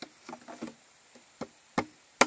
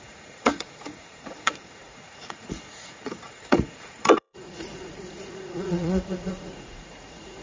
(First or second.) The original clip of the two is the first